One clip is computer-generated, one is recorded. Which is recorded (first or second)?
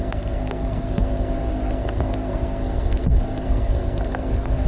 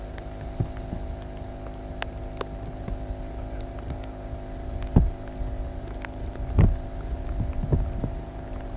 second